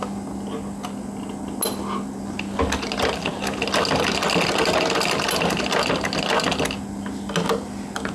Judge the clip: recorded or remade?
recorded